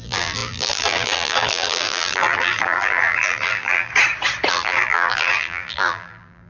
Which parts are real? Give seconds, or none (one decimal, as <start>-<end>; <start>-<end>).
3.9-4.5